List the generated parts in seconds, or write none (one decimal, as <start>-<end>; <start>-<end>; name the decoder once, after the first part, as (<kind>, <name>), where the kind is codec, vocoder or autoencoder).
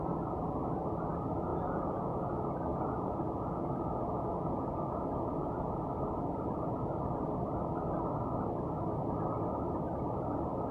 1.5-5.6 (vocoder, Vocos)